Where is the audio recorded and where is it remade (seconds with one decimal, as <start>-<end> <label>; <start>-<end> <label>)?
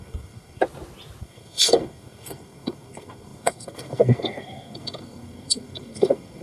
0.0-0.6 remade; 0.6-1.2 recorded; 1.2-6.4 remade